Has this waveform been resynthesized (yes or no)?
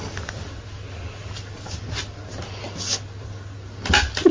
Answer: no